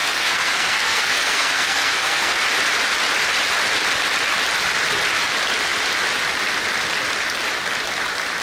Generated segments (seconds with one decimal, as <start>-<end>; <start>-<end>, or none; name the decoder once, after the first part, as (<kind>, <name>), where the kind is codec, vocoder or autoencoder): 0.0-2.4 (codec, SNAC)